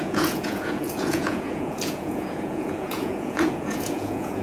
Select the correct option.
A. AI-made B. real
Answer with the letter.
A